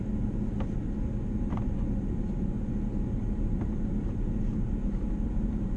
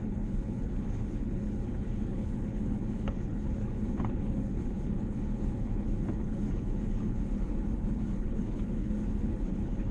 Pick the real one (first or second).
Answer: first